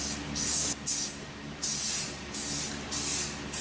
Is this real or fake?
real